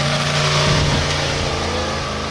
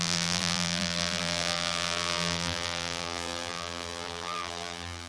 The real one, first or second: first